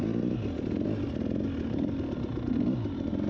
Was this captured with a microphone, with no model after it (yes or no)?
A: yes